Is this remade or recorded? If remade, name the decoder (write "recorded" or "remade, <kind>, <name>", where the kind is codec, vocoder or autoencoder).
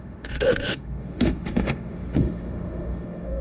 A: remade, autoencoder, DAC-VAE